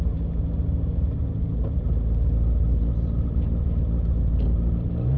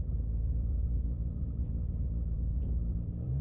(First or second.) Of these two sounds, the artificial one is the second